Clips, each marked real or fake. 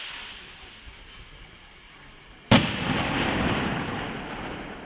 real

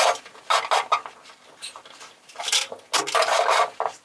real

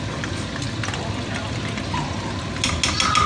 real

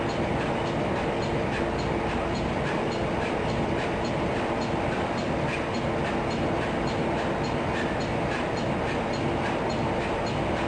real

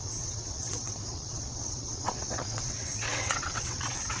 fake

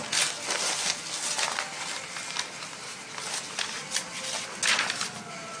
real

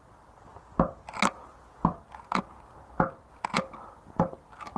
real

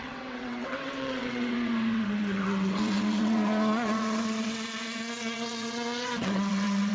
fake